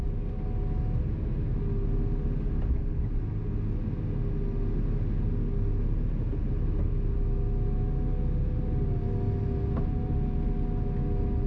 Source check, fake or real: real